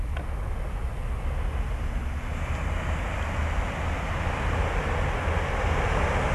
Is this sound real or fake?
real